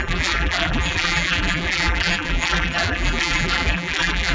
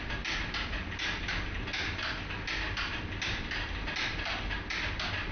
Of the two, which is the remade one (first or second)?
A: first